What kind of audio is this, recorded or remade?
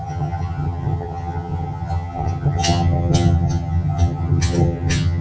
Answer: remade